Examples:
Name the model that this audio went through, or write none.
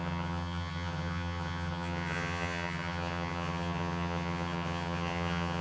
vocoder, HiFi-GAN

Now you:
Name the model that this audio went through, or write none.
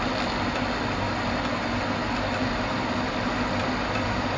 none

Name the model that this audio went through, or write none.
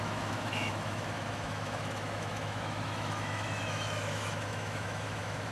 autoencoder, DAC-VAE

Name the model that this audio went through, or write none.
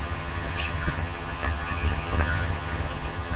vocoder, HiFi-GAN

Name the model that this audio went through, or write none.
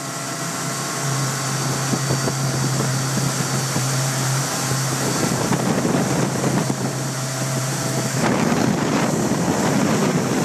none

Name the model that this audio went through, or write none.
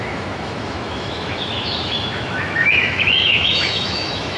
autoencoder, DAC-VAE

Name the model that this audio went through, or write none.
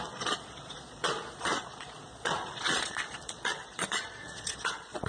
vocoder, Vocos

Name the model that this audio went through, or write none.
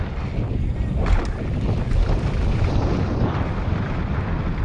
none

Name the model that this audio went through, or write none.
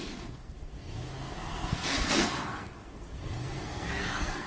codec, SNAC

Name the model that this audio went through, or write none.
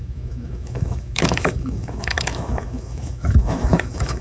autoencoder, DAC-VAE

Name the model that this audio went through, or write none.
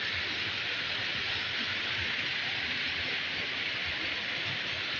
none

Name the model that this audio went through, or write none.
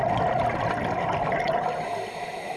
none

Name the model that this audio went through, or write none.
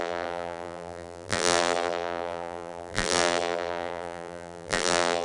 vocoder, BigVGAN v2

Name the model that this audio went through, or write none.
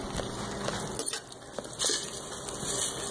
none